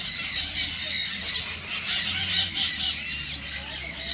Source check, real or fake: real